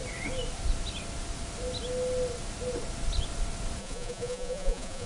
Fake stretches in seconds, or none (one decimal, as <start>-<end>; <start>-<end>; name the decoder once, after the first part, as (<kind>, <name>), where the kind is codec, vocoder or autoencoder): 3.8-5.1 (vocoder, Vocos)